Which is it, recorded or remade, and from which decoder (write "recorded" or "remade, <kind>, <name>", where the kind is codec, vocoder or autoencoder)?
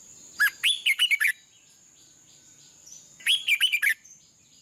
recorded